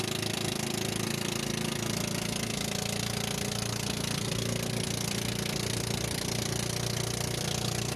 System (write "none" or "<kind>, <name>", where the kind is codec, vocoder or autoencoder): none